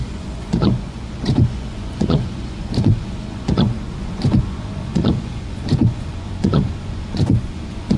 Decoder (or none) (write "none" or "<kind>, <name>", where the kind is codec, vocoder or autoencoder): vocoder, Vocos